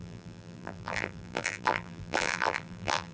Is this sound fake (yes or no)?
yes